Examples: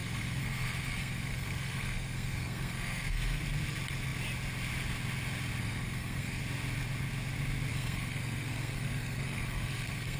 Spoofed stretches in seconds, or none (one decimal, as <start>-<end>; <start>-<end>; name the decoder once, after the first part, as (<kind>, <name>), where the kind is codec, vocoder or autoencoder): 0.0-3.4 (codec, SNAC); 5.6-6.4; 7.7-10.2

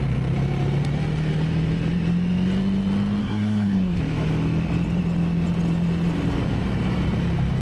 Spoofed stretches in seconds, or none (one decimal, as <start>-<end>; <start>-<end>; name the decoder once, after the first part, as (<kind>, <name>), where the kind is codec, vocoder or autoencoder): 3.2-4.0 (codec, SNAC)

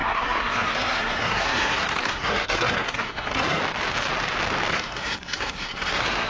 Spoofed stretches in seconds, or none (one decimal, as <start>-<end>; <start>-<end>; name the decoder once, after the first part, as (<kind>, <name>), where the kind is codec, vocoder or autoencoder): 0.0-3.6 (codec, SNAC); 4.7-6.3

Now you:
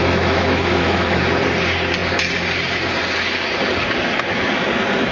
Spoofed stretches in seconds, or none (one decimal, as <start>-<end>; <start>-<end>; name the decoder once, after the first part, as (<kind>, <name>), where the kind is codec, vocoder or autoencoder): 0.0-1.2 (autoencoder, DAC-VAE)

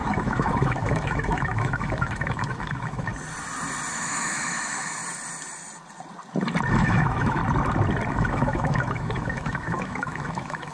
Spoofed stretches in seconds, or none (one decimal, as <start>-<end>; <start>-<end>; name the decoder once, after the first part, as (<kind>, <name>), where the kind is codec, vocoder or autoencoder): 0.0-3.1 (autoencoder, DAC-VAE); 3.9-5.0; 6.7-7.4; 8.1-10.7

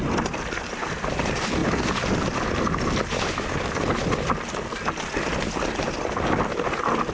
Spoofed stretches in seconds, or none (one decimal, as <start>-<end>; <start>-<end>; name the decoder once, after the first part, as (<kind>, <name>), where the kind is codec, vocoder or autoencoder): none